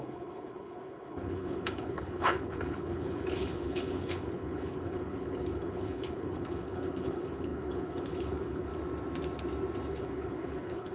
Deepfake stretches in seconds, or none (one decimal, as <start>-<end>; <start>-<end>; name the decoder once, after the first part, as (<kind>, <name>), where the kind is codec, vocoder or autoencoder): 0.0-8.7 (codec, HILCodec); 9.9-10.9